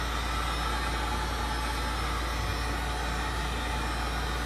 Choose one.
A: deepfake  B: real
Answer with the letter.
B